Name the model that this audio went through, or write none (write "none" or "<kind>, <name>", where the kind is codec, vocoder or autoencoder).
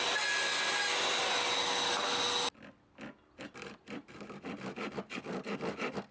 none